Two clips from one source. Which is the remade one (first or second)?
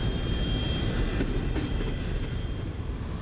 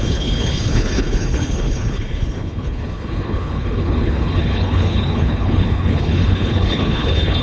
second